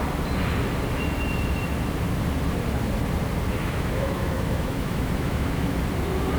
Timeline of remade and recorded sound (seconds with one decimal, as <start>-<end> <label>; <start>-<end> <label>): 0.0-3.6 recorded; 3.6-5.8 remade; 5.8-6.4 recorded